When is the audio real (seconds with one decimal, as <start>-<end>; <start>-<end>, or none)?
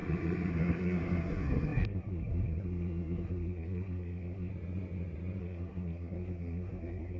0.0-0.5; 4.5-5.4